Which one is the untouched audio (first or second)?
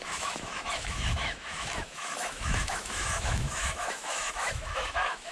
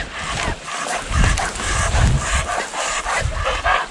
second